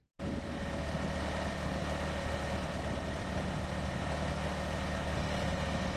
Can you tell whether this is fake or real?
real